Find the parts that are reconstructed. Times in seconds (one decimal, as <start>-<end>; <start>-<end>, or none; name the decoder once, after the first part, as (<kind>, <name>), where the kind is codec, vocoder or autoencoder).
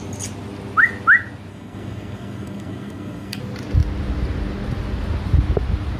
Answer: 1.5-3.4 (codec, SNAC)